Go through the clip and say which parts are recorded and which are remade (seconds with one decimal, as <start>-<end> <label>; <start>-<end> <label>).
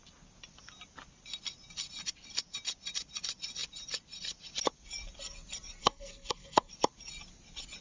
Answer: 0.0-5.8 recorded; 5.8-6.7 remade; 6.7-7.8 recorded